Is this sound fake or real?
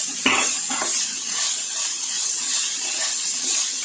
fake